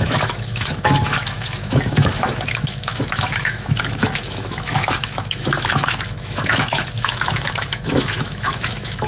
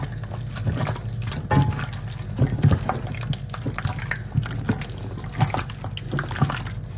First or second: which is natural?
second